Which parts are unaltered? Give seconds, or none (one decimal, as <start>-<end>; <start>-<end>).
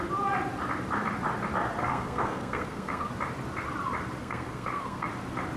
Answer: 0.0-1.8; 3.1-4.2; 5.1-5.6